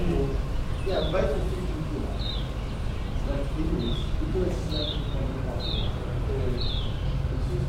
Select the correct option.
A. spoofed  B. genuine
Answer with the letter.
B